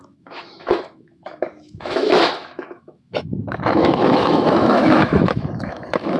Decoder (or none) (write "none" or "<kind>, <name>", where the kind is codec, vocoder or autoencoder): autoencoder, DAC-VAE